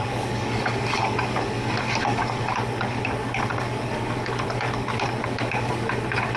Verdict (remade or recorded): remade